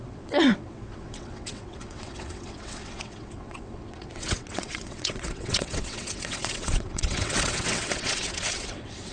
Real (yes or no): no